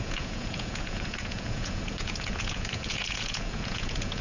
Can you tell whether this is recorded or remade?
remade